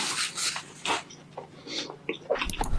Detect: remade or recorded recorded